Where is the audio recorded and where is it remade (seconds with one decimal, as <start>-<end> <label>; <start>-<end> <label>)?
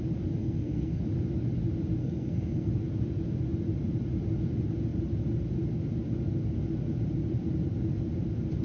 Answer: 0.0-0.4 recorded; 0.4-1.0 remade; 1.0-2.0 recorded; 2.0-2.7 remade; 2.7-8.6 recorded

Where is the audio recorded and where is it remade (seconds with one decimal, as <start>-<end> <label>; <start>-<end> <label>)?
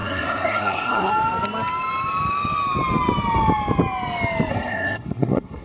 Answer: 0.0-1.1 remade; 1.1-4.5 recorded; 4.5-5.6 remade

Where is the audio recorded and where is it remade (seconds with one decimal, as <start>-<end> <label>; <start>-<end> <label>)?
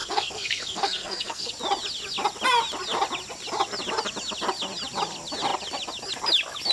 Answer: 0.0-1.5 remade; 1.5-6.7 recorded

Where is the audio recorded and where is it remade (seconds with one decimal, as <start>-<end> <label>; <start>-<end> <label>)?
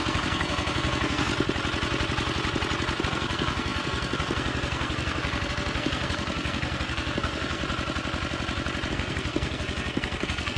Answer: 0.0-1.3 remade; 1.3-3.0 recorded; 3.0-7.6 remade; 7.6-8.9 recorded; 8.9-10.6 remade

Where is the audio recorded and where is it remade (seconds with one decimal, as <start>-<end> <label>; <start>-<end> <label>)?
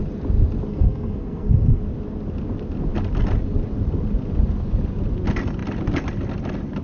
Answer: 0.0-0.7 recorded; 0.7-1.8 remade; 1.8-6.8 recorded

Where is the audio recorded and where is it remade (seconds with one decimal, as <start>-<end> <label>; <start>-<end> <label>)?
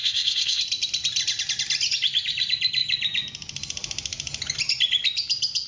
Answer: 0.0-0.6 remade; 0.6-5.7 recorded